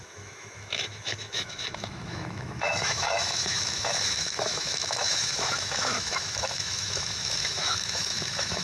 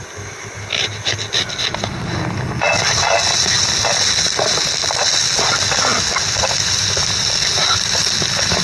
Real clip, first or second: second